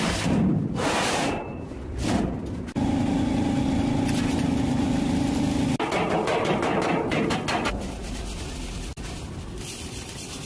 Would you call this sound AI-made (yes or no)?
no